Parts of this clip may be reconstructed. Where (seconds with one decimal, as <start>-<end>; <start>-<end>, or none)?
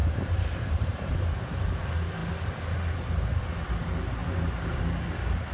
0.0-1.8; 4.2-4.8